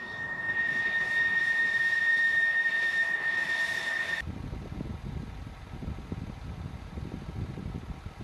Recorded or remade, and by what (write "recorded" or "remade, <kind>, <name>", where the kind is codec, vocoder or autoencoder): remade, vocoder, BigVGAN v2